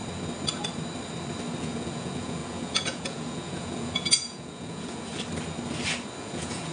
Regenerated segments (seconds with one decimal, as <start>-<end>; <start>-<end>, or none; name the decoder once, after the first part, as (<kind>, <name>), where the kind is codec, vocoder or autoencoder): 1.6-5.1 (vocoder, Vocos); 6.2-6.7